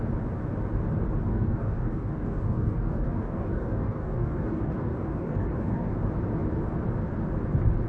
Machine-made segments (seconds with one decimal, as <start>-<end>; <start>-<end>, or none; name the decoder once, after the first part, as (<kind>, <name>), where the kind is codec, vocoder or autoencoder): 1.3-6.0 (codec, DAC)